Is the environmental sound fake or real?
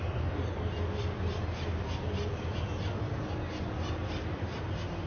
real